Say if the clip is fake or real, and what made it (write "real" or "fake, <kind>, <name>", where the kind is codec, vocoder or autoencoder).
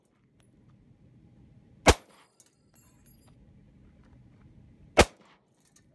real